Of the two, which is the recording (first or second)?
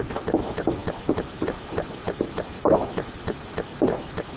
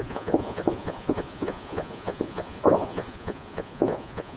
first